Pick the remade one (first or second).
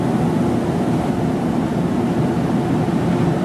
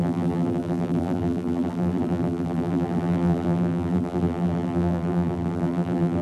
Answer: second